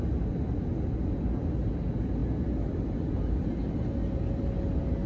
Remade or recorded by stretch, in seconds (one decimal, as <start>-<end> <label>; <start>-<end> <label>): 0.0-5.1 recorded